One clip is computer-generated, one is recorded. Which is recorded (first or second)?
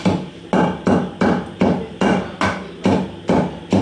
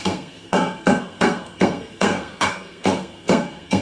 first